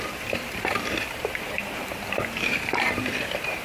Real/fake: fake